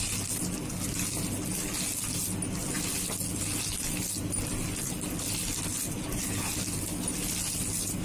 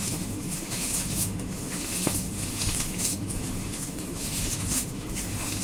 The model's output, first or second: second